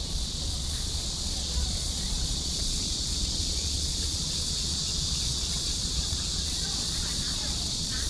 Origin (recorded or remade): remade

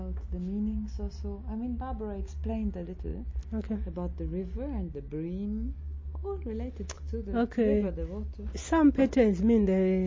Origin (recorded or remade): recorded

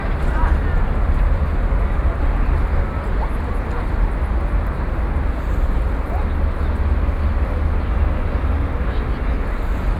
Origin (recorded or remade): recorded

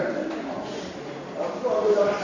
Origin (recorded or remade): remade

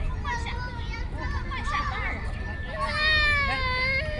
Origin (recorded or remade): recorded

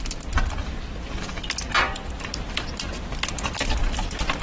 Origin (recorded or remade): recorded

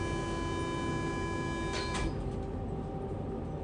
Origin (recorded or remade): recorded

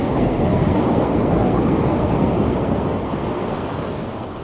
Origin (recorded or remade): remade